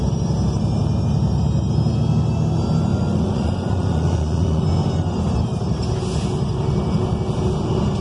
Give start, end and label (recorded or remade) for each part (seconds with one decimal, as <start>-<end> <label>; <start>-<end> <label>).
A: 0.0-2.9 recorded; 2.9-4.6 remade; 4.6-8.0 recorded